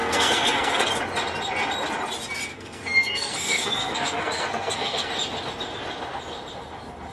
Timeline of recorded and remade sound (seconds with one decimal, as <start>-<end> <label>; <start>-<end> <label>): 0.0-0.9 remade; 0.9-2.5 recorded; 2.5-5.1 remade; 5.1-7.1 recorded